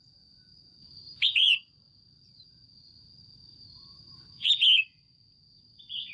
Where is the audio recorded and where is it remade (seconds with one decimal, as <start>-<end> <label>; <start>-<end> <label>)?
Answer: 0.0-0.8 recorded; 0.8-4.5 remade; 4.5-6.1 recorded